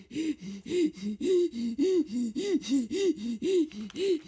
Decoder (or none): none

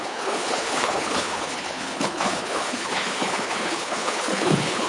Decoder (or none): codec, HILCodec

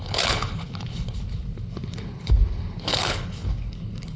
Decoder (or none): codec, HILCodec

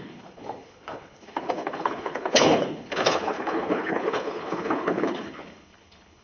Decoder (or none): codec, HILCodec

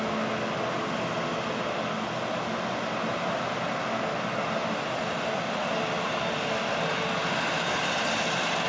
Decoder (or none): none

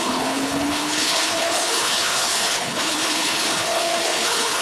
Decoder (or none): codec, HILCodec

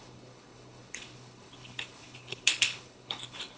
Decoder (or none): codec, HILCodec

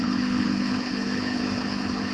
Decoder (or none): codec, HILCodec